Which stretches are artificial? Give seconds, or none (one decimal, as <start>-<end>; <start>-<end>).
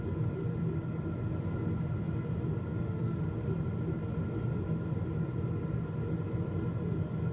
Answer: 2.7-3.2